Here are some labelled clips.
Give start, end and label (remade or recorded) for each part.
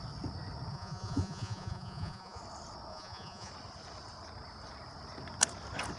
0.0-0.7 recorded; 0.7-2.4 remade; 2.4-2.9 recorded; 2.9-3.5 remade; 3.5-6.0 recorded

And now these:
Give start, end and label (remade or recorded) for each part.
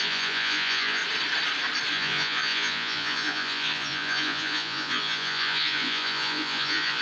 0.0-1.0 remade; 1.0-1.9 recorded; 1.9-7.0 remade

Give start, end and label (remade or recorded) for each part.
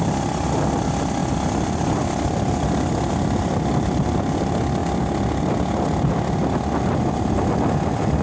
0.0-8.2 recorded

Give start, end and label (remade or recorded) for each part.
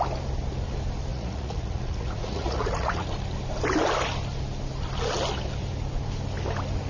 0.0-1.1 recorded; 1.1-3.1 remade; 3.1-6.9 recorded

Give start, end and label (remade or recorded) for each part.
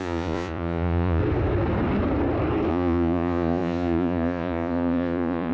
0.0-1.2 remade; 1.2-2.7 recorded; 2.7-5.5 remade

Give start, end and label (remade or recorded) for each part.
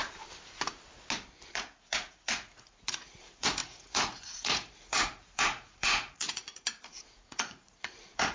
0.0-1.5 recorded; 1.5-8.3 remade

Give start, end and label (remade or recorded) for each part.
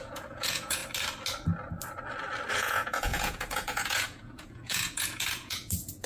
0.0-0.8 remade; 0.8-2.5 recorded; 2.5-6.1 remade